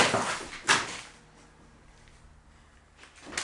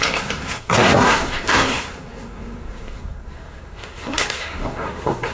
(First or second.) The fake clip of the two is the second